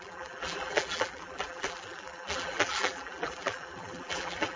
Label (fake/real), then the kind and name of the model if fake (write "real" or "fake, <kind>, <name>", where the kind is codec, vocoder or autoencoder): fake, vocoder, BigVGAN v2